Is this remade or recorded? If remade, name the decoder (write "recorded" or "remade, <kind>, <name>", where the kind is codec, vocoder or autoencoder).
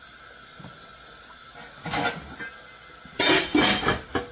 recorded